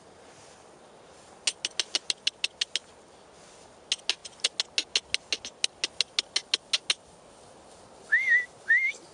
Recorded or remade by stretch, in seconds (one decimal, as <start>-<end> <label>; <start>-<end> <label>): 0.0-9.1 recorded